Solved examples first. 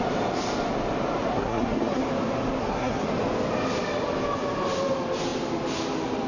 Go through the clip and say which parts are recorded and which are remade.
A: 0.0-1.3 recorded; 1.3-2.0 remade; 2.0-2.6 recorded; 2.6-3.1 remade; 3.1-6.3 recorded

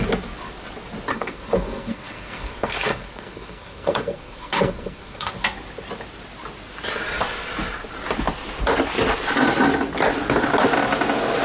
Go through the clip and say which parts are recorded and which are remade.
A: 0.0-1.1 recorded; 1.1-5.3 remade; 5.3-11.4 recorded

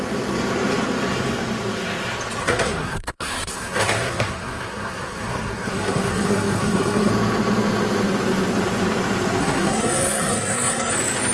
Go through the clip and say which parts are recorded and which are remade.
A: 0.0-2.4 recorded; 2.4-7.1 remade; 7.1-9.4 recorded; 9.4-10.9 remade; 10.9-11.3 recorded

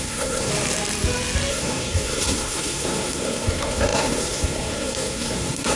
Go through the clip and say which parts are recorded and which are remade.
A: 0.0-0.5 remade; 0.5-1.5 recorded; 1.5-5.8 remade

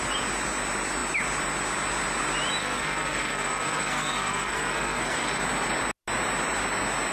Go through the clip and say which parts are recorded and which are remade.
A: 0.0-2.6 recorded; 2.6-5.4 remade; 5.4-7.1 recorded